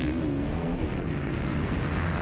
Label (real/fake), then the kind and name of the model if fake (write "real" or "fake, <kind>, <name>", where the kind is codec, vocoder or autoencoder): fake, codec, SNAC